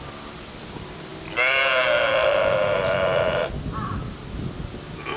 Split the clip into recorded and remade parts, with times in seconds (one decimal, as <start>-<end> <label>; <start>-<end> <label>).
0.0-5.2 recorded